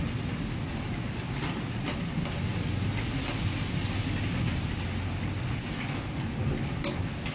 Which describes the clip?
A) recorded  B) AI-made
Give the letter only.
A